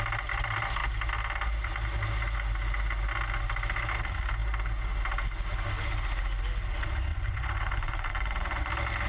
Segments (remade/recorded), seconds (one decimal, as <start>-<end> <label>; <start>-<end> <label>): 0.0-7.1 recorded; 7.1-8.7 remade; 8.7-9.1 recorded